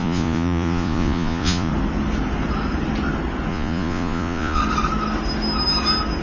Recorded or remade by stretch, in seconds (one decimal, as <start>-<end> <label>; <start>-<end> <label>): 0.0-1.7 remade; 1.7-3.5 recorded; 3.5-4.6 remade; 4.6-6.2 recorded

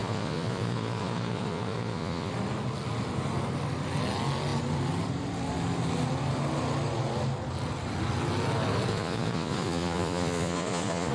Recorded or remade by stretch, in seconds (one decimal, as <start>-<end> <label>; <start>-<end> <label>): 0.0-2.3 remade; 2.3-8.9 recorded; 8.9-11.1 remade

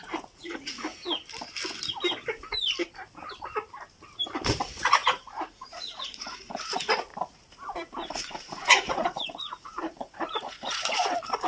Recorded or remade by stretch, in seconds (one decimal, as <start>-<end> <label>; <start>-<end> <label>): 0.0-0.9 remade; 0.9-4.6 recorded; 4.6-7.1 remade; 7.1-8.2 recorded; 8.2-11.5 remade

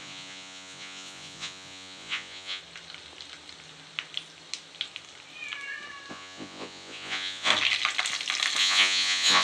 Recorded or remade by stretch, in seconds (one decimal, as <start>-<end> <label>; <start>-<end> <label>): 0.0-2.6 remade; 2.6-6.1 recorded; 6.1-7.5 remade; 7.5-8.6 recorded; 8.6-9.4 remade

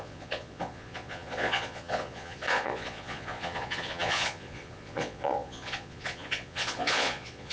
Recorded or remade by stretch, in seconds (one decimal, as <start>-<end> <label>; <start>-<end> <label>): 0.0-7.5 remade

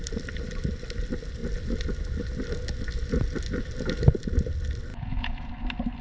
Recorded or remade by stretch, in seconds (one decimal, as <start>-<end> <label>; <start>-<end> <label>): 0.0-4.9 recorded; 4.9-5.5 remade; 5.5-6.0 recorded

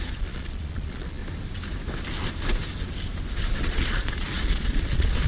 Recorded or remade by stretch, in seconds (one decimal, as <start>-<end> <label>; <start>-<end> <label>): 0.0-1.2 remade; 1.2-3.6 recorded; 3.6-5.3 remade

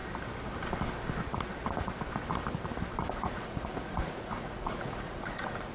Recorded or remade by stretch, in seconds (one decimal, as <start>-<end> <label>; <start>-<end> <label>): 0.0-3.1 recorded; 3.1-5.7 remade